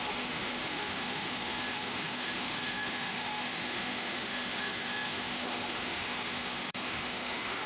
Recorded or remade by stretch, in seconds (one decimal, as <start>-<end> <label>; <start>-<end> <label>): 0.0-7.7 remade